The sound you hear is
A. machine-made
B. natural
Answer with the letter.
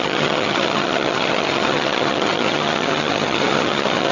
A